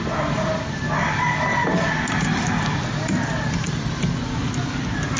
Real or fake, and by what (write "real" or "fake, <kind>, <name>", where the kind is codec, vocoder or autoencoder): real